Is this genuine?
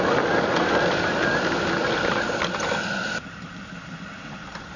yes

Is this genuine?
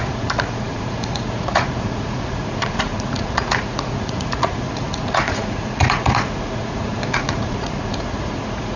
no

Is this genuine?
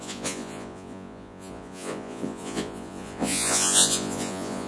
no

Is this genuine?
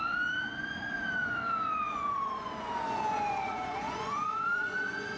no